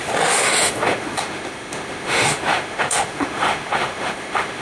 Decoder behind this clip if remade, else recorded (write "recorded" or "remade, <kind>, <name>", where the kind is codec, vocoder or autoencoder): remade, autoencoder, DAC-VAE